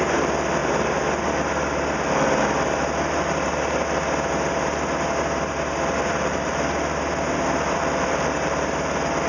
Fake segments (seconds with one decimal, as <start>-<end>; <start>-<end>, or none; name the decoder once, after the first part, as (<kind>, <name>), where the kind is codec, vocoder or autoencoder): 0.0-0.6 (vocoder, BigVGAN v2); 5.5-9.3